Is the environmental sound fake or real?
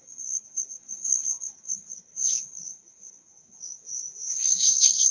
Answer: fake